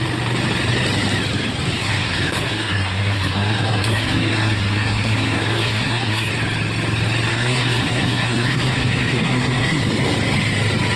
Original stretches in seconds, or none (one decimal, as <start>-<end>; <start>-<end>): 0.0-1.8; 6.3-7.3; 9.9-11.0